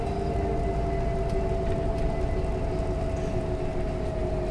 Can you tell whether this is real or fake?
real